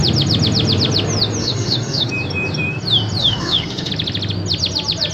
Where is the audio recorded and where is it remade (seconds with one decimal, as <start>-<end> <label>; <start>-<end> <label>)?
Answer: 0.0-1.4 recorded; 1.4-2.1 remade; 2.1-3.2 recorded; 3.2-3.9 remade; 3.9-5.1 recorded